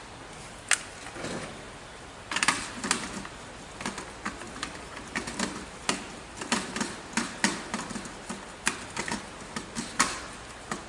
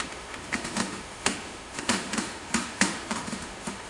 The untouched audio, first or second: first